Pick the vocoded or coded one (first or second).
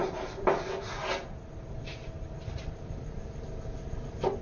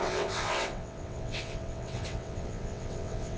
second